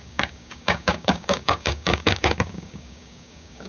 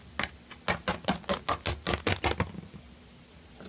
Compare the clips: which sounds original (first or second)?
second